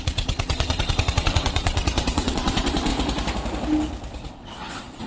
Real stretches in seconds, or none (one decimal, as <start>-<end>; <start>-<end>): 2.9-4.3